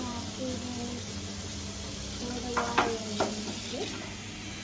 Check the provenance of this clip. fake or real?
real